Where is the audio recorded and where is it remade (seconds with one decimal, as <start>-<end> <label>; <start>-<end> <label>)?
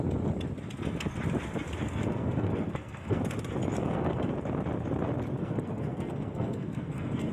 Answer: 0.0-1.8 recorded; 1.8-3.2 remade; 3.2-3.8 recorded; 3.8-4.3 remade; 4.3-5.4 recorded; 5.4-7.3 remade